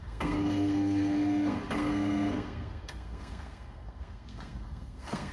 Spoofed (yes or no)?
yes